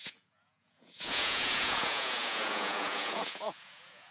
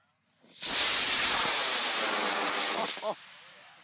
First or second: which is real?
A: second